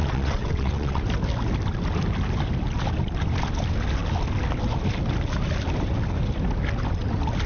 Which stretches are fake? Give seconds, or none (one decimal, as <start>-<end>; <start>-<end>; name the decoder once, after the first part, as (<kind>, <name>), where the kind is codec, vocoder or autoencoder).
0.0-1.0 (vocoder, WaveNeXt)